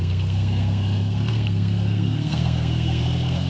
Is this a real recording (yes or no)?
no